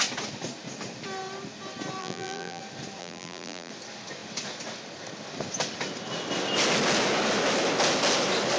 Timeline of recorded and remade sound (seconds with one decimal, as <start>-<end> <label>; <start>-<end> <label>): 0.0-2.0 recorded; 2.0-2.6 remade; 2.6-3.0 recorded; 3.0-3.7 remade; 3.7-8.6 recorded